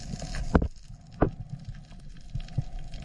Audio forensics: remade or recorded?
recorded